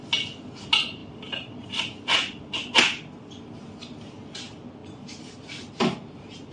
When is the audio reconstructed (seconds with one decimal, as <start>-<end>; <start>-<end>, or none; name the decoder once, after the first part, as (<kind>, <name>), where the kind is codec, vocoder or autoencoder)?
none